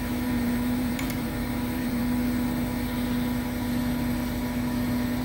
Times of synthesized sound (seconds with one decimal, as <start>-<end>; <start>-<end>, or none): 0.0-2.0